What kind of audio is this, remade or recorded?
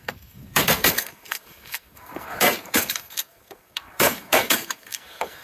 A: remade